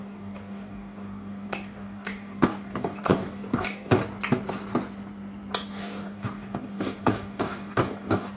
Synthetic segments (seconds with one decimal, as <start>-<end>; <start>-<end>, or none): 0.0-4.0; 5.7-8.4